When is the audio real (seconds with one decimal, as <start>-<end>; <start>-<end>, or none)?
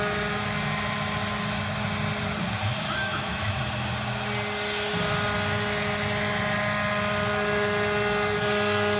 0.0-3.0; 3.6-9.0